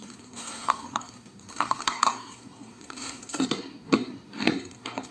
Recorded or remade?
remade